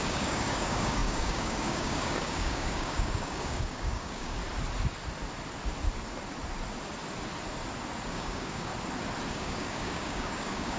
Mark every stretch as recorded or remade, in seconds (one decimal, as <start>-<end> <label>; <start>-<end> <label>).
0.0-4.4 remade; 4.4-8.1 recorded; 8.1-8.7 remade; 8.7-9.3 recorded; 9.3-10.8 remade